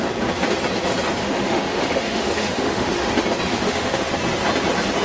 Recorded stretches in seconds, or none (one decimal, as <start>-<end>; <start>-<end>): 0.0-1.2; 3.1-3.5; 4.1-5.0